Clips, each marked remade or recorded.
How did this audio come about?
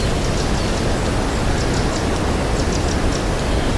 recorded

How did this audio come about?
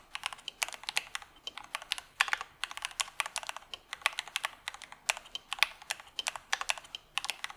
recorded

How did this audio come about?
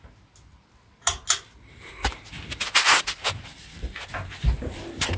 recorded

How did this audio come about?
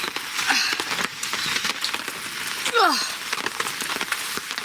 recorded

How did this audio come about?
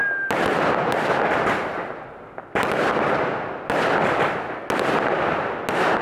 recorded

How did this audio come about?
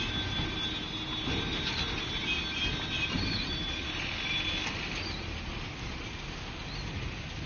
recorded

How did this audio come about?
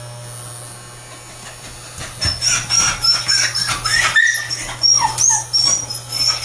recorded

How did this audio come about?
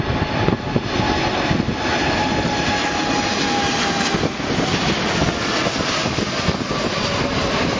recorded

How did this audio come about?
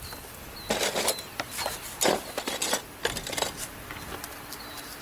recorded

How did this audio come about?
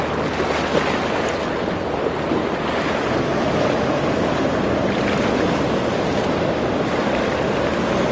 recorded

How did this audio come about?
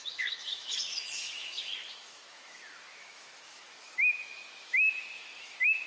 remade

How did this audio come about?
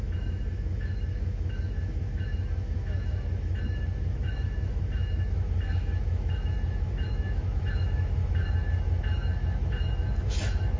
remade